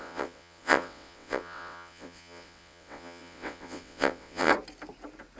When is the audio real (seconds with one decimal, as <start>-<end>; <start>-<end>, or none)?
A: 4.5-5.4